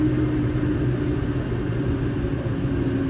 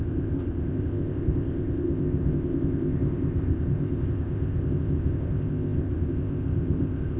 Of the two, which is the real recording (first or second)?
first